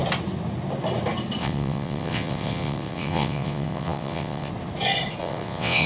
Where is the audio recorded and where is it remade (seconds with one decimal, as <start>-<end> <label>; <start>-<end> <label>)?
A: 0.0-1.4 recorded; 1.4-4.5 remade; 4.5-5.2 recorded; 5.2-5.9 remade

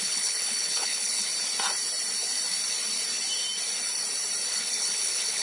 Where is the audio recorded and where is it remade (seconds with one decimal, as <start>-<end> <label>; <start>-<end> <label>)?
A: 0.0-1.3 remade; 1.3-4.5 recorded; 4.5-5.4 remade

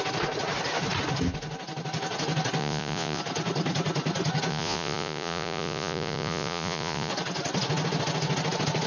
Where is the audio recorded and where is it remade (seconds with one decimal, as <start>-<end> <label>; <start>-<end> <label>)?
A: 0.0-2.6 recorded; 2.6-3.2 remade; 3.2-4.5 recorded; 4.5-7.1 remade; 7.1-8.9 recorded